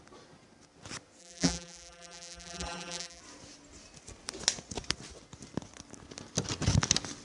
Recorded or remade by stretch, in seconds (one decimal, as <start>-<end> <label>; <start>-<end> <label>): 0.0-1.2 recorded; 1.2-3.2 remade; 3.2-7.2 recorded